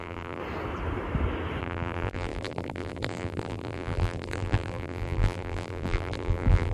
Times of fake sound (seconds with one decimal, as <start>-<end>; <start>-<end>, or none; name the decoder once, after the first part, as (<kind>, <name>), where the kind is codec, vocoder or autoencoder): 0.0-0.4 (vocoder, BigVGAN v2); 1.6-6.7